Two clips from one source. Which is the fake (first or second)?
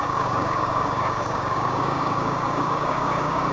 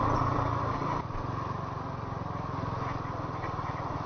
first